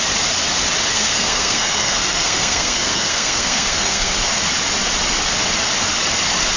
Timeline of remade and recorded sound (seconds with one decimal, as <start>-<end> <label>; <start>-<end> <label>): 0.0-0.9 recorded; 0.9-4.2 remade; 4.2-6.6 recorded